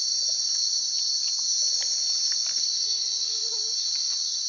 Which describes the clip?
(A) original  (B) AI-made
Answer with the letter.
A